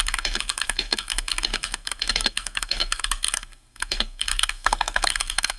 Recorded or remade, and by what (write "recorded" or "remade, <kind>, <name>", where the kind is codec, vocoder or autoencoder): remade, codec, SNAC